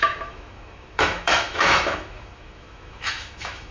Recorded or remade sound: remade